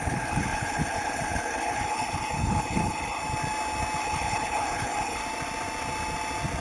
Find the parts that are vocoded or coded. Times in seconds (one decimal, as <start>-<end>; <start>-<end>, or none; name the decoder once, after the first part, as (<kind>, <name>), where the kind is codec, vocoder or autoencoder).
0.0-3.2 (codec, HILCodec); 4.0-5.2